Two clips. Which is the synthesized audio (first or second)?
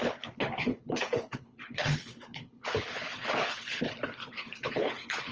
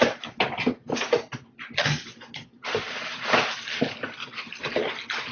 first